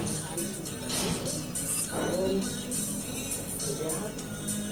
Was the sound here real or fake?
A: real